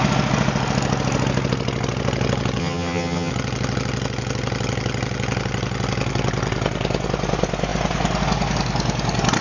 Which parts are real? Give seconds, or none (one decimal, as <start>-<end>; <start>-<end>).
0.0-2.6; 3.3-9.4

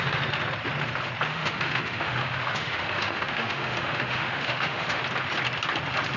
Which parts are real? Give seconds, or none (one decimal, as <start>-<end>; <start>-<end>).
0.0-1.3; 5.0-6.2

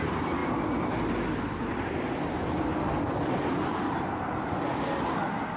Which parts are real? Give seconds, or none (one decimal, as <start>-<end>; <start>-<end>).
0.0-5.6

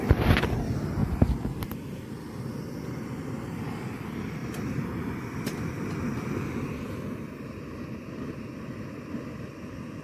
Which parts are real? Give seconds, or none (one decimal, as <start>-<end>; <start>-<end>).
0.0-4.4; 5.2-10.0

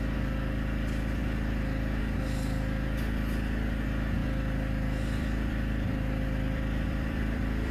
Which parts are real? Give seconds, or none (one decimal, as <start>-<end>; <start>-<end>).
0.0-4.2

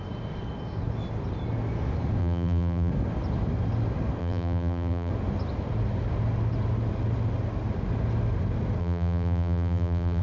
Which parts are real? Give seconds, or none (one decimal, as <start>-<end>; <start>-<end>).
0.0-2.2; 2.9-4.2; 5.1-8.8

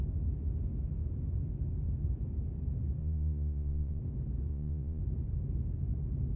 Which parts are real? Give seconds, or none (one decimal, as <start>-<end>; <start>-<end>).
0.0-3.0; 4.0-4.5; 5.0-6.4

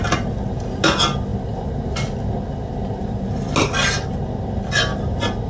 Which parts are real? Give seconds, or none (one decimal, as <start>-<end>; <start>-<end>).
0.0-5.5